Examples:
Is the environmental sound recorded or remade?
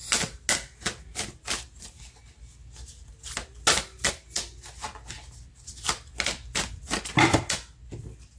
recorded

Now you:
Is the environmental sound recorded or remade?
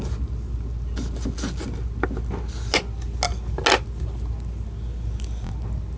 recorded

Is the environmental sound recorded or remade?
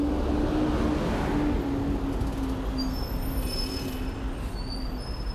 recorded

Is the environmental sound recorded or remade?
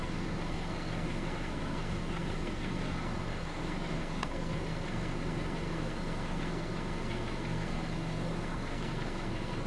remade